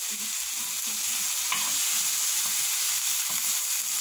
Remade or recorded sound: recorded